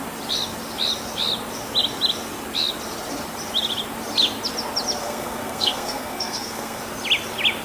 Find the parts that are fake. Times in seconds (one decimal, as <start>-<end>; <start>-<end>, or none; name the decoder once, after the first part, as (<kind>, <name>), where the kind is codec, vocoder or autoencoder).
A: 5.0-6.8 (codec, SNAC)